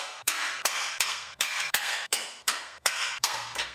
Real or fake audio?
fake